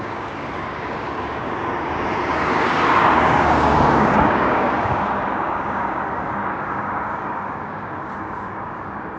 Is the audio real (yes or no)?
no